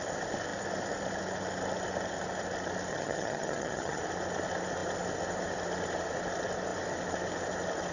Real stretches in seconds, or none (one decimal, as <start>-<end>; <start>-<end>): 0.0-2.9; 4.0-7.9